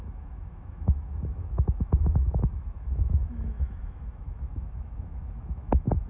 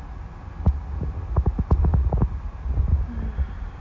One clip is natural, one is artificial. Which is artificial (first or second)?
first